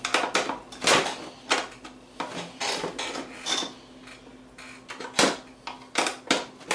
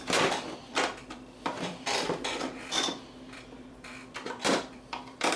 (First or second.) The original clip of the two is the first